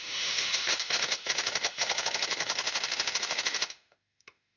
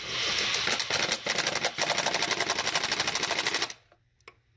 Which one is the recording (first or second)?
second